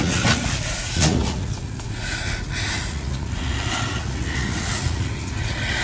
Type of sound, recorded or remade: remade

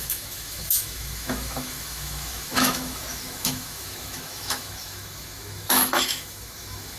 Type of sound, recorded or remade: remade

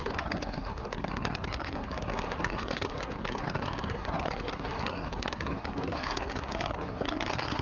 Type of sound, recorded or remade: remade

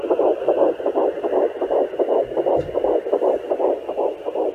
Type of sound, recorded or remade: recorded